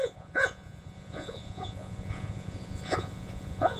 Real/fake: fake